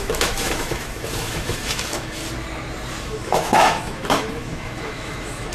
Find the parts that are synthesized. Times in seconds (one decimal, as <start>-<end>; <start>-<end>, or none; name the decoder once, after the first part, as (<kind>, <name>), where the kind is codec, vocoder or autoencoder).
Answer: 0.0-2.2 (autoencoder, DAC-VAE); 3.0-5.5